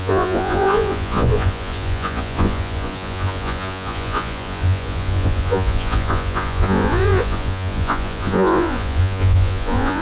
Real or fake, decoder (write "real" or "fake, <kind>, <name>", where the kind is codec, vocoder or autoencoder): fake, vocoder, Vocos